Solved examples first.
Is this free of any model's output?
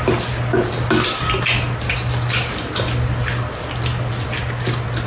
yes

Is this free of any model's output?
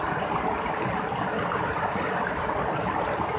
yes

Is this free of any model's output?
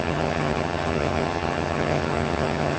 no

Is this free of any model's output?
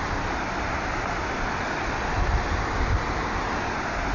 yes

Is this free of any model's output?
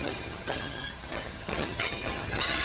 no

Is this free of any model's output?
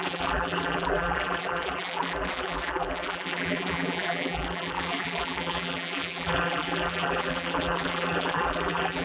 no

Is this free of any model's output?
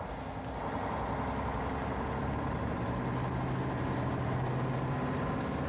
yes